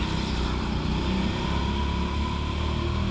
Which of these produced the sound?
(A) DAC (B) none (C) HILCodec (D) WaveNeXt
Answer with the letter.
B